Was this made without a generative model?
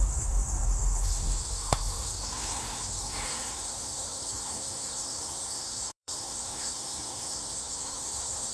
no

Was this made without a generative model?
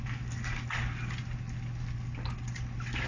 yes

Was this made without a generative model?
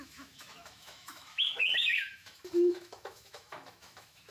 no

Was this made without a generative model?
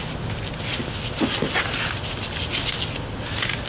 yes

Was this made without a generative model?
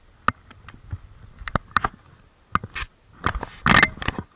yes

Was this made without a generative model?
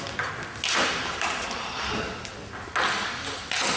yes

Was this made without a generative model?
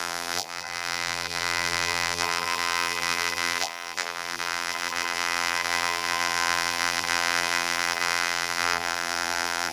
no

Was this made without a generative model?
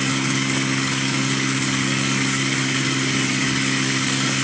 no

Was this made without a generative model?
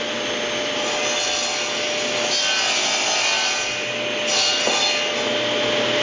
yes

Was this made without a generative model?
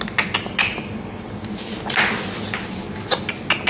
yes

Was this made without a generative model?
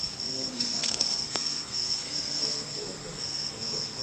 no